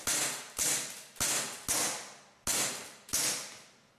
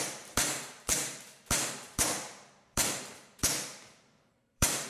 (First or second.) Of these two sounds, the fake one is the second